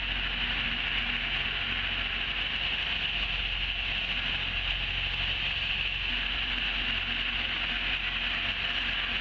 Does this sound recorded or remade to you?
recorded